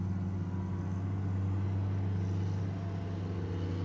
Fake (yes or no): no